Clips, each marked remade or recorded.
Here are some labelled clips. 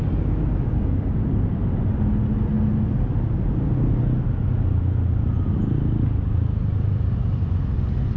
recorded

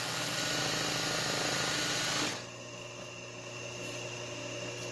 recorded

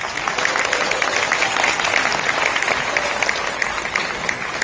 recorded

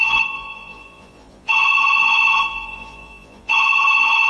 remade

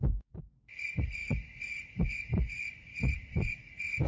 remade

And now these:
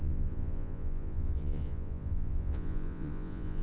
remade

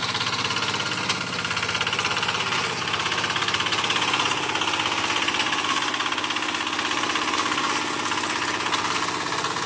recorded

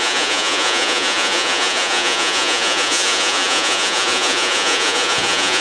remade